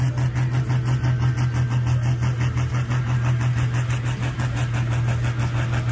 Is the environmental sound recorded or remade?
recorded